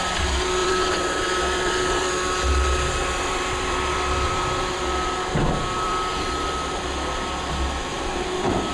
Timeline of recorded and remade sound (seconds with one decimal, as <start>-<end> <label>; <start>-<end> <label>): 0.0-8.7 remade